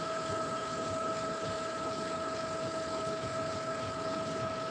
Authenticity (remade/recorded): remade